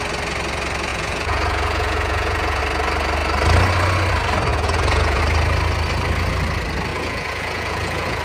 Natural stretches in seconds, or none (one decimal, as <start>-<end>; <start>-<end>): 0.0-0.9; 2.6-4.5; 5.2-6.9